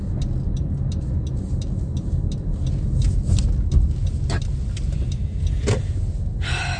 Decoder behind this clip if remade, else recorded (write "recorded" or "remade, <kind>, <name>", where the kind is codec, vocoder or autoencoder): recorded